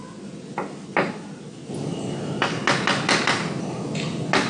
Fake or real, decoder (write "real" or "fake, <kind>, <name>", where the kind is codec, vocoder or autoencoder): real